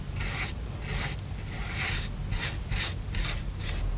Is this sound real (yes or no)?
yes